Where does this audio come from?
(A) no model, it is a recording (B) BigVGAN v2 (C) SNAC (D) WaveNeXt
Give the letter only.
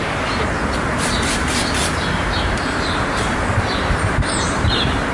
B